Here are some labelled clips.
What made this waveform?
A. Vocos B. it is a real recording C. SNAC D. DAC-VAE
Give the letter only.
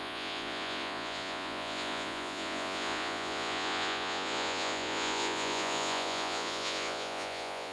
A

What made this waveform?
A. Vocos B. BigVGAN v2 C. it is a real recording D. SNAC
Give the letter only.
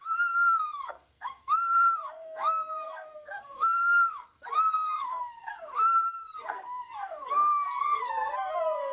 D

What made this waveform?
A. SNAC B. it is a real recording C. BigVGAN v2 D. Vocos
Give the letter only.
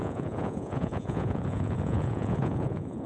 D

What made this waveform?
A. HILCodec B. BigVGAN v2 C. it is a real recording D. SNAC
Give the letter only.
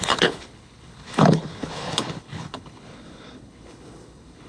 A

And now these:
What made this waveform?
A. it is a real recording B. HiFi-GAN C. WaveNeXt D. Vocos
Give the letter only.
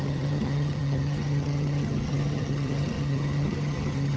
B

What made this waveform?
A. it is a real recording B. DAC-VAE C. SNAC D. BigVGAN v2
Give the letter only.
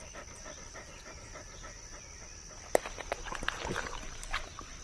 A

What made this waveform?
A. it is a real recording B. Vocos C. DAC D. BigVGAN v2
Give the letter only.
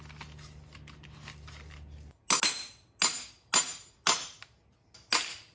A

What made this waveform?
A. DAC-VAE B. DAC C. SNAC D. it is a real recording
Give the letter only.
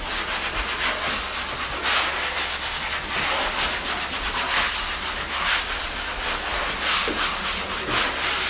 D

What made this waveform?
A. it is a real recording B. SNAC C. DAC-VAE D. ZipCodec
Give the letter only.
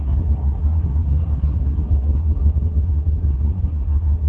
B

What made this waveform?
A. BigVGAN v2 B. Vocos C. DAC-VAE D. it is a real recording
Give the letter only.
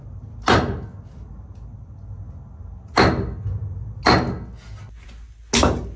D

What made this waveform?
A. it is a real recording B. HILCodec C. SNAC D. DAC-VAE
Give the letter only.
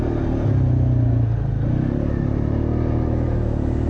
A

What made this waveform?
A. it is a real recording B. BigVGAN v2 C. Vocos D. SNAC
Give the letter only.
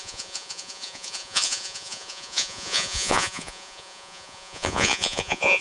C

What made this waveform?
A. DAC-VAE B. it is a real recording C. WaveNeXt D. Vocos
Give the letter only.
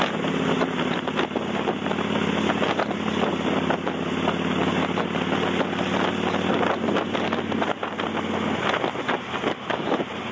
B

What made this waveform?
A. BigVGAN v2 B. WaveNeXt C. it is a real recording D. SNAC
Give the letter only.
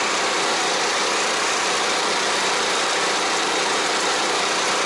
A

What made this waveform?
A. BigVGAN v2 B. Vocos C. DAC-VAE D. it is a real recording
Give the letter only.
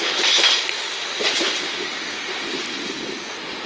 D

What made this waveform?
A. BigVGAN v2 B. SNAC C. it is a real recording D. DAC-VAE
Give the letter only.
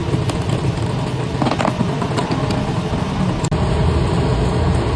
C